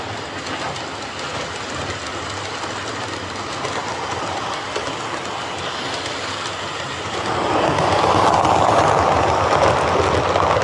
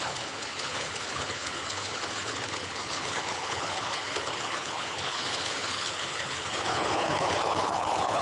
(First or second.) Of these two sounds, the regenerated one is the second